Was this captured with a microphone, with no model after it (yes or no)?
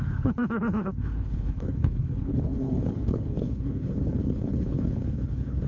no